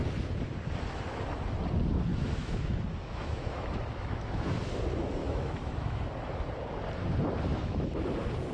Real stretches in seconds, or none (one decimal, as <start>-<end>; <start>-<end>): 0.0-2.1; 4.8-5.2; 6.0-7.5; 8.0-8.5